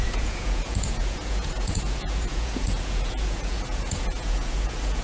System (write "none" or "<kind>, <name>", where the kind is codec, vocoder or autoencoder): vocoder, Vocos